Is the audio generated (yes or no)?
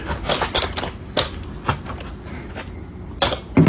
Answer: no